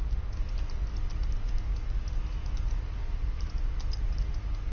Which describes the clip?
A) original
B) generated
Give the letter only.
A